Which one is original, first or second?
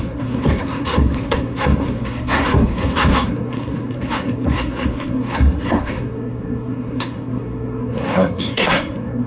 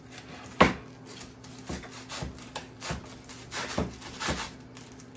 second